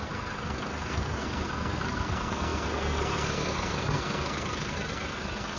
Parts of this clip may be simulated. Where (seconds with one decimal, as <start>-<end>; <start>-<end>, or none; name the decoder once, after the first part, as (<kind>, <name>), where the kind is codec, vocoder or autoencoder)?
0.0-5.6 (codec, SNAC)